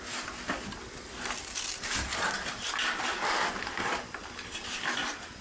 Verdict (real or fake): real